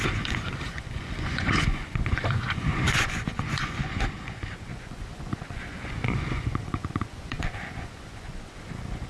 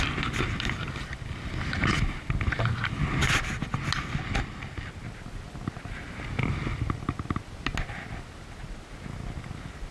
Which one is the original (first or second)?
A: second